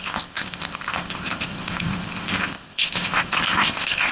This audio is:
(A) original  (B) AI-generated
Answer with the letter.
B